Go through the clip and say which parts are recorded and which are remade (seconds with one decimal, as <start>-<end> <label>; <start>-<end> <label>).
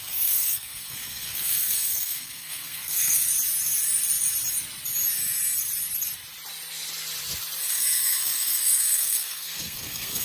0.0-3.3 remade; 3.3-7.7 recorded; 7.7-10.2 remade